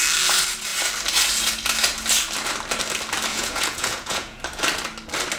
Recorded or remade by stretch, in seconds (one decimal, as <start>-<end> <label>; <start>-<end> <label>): 0.0-3.3 recorded; 3.3-4.4 remade; 4.4-5.4 recorded